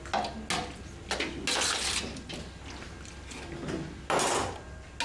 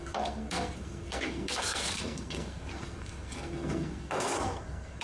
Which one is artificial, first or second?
second